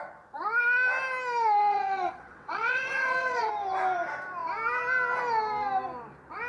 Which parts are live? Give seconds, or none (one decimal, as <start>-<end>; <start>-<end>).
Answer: 0.0-1.6; 3.5-6.5